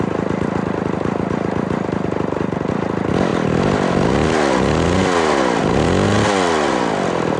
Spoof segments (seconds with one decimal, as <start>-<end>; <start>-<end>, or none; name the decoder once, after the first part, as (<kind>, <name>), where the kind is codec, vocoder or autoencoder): none